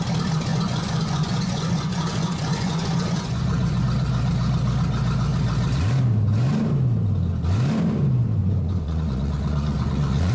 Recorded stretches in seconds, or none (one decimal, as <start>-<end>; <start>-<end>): 0.0-0.5; 3.8-8.4